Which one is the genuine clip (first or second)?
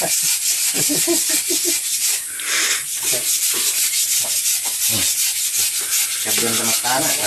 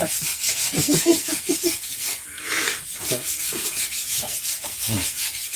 first